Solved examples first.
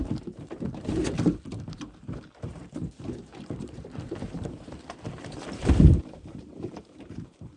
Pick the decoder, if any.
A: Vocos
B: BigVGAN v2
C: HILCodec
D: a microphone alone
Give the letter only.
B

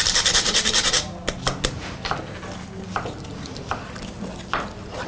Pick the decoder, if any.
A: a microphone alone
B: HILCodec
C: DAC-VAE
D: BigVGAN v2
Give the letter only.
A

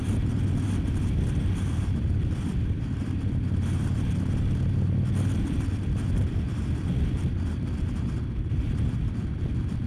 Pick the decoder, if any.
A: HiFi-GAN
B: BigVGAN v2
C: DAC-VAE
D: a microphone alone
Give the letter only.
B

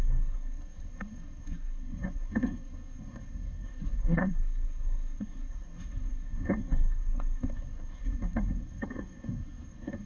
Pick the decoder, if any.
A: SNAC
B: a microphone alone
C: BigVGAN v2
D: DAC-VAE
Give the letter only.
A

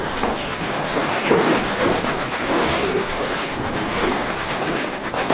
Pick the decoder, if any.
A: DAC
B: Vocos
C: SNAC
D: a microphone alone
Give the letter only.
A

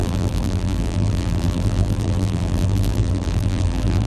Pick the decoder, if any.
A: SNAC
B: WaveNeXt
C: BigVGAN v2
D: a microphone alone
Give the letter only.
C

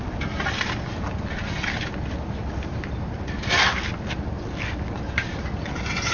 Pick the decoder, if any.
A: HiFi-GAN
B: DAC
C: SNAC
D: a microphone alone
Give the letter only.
D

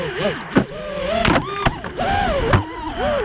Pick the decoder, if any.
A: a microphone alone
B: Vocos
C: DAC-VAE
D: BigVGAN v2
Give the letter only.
A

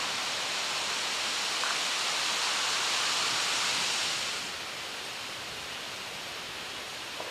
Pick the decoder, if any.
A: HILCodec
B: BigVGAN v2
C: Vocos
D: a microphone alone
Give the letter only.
D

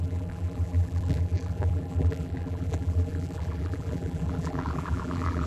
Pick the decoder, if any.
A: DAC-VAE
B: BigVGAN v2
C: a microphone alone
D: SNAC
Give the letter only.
B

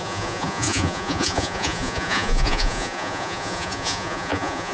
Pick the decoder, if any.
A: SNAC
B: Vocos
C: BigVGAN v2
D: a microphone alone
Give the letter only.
B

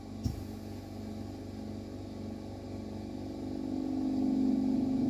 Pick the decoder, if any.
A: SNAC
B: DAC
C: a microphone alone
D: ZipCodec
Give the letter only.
C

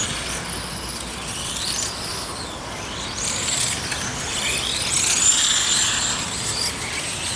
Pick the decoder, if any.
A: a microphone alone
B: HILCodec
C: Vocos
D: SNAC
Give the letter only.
A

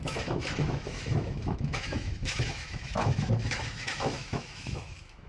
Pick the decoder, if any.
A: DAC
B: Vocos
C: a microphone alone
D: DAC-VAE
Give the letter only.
D